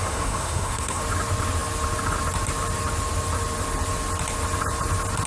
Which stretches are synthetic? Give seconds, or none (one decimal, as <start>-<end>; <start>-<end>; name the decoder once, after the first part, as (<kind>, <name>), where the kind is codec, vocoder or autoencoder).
0.0-1.0 (codec, SNAC)